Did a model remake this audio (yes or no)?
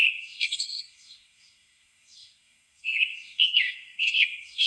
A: yes